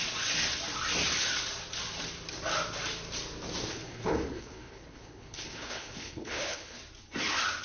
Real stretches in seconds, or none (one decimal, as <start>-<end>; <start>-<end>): 0.0-3.7; 6.8-7.6